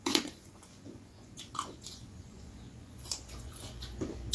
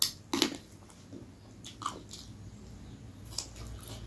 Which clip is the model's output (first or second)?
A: first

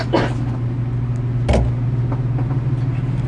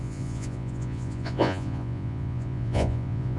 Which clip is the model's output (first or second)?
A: second